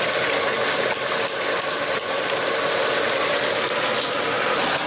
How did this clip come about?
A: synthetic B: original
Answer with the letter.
B